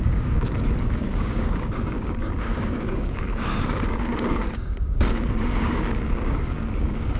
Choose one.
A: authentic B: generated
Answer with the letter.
B